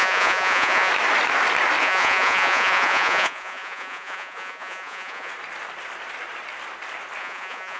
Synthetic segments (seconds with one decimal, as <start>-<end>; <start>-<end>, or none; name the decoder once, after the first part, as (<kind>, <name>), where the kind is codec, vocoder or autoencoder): 0.0-0.9 (vocoder, Vocos); 1.8-5.3; 7.2-7.8